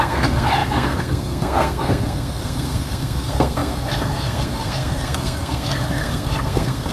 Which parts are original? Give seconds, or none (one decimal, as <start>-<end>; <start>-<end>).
none